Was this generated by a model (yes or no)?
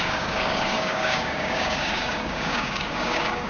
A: yes